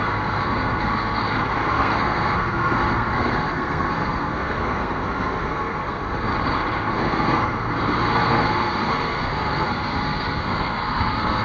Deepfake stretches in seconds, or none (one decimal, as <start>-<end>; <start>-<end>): 0.0-1.2; 1.7-6.3; 6.9-11.4